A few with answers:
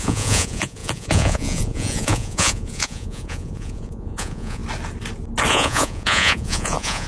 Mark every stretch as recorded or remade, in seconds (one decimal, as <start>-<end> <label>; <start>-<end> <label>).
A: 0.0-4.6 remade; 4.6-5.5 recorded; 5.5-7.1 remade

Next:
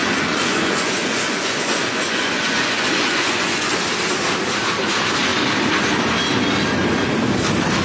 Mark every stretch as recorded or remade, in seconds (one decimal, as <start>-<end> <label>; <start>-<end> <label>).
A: 0.0-3.7 remade; 3.7-7.8 recorded

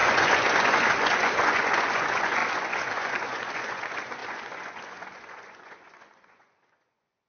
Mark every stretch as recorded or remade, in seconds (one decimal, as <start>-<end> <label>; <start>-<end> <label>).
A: 0.0-7.3 remade

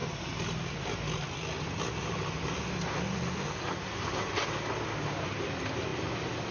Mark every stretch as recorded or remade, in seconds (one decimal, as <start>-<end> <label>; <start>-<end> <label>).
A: 0.0-6.5 recorded